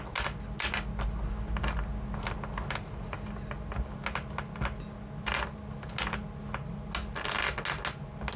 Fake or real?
real